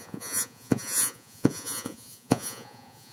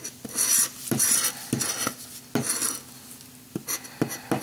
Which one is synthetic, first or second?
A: first